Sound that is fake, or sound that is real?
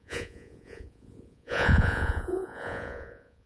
fake